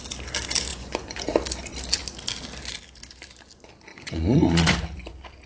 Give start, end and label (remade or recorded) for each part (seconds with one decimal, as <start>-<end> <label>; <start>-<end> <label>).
0.0-0.7 recorded; 0.7-1.2 remade; 1.2-3.9 recorded; 3.9-5.1 remade; 5.1-5.5 recorded